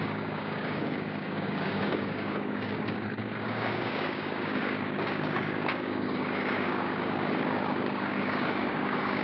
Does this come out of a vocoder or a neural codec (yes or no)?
yes